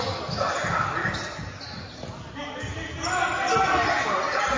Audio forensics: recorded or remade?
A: recorded